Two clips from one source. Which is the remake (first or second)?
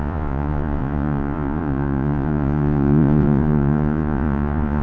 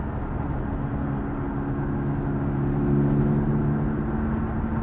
first